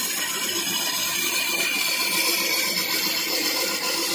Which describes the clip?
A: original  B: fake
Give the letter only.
B